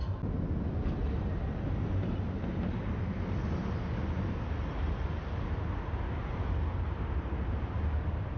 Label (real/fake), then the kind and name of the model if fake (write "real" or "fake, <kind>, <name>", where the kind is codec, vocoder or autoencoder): real